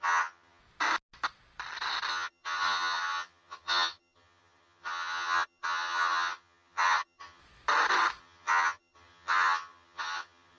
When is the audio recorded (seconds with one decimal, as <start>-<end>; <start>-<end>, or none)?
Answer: 0.6-2.1; 7.4-8.2